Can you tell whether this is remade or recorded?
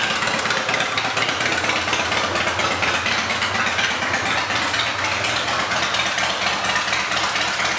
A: recorded